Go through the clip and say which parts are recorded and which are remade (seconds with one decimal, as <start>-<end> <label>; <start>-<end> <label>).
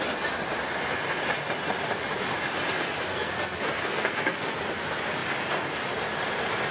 0.0-3.1 recorded; 3.1-4.6 remade; 4.6-6.7 recorded